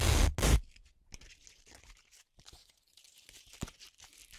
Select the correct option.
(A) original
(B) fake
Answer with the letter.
A